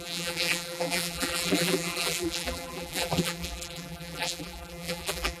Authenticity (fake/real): fake